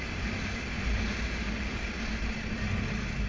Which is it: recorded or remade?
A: recorded